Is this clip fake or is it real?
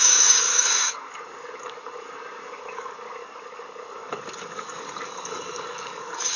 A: fake